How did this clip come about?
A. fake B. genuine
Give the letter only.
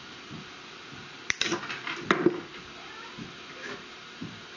A